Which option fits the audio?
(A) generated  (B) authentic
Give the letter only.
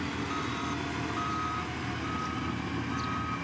B